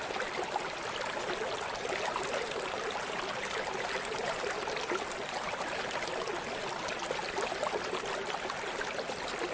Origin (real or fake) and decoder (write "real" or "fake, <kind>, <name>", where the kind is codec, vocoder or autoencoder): real